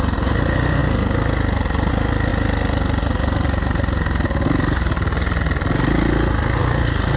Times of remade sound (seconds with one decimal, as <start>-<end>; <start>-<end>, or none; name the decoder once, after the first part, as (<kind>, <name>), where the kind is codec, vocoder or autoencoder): none

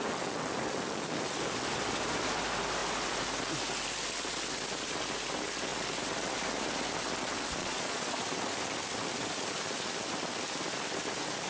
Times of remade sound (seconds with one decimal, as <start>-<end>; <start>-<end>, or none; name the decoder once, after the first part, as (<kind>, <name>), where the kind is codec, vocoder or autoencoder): 7.6-8.2 (vocoder, Vocos)

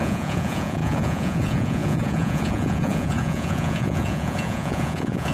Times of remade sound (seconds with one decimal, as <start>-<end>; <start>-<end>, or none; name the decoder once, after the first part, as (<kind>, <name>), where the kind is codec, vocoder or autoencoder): 0.0-5.3 (vocoder, Vocos)

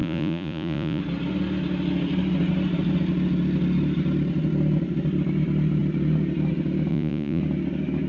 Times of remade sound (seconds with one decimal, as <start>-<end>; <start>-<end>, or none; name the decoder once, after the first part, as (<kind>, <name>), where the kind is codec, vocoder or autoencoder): 0.0-1.0 (vocoder, Vocos); 6.9-7.4